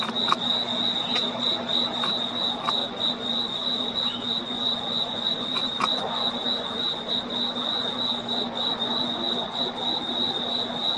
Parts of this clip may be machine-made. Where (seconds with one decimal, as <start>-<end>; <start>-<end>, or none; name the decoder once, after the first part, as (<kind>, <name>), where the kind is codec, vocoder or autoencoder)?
2.8-7.1 (vocoder, Vocos); 7.6-9.7